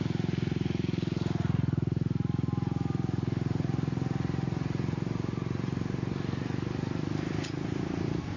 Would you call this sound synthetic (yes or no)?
no